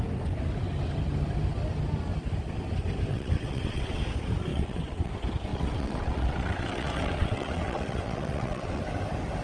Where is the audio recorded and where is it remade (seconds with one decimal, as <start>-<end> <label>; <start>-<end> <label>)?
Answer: 0.0-3.1 recorded; 3.1-4.0 remade; 4.0-4.5 recorded; 4.5-5.1 remade; 5.1-5.5 recorded; 5.5-8.8 remade; 8.8-9.4 recorded